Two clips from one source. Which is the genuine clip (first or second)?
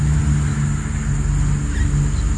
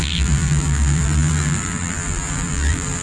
first